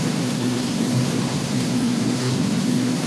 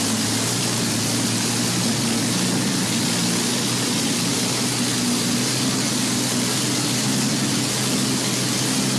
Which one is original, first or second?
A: second